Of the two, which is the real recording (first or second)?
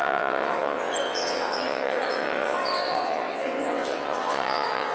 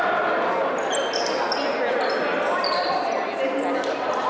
second